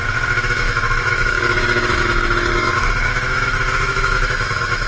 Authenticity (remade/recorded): remade